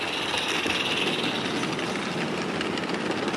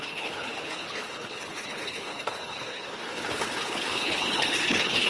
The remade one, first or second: second